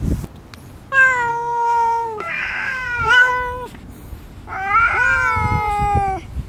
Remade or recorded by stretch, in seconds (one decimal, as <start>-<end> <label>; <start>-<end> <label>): 0.0-1.3 recorded; 1.3-3.3 remade; 3.3-6.5 recorded